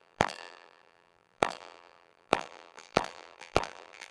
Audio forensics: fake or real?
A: fake